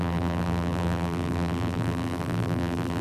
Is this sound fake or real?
fake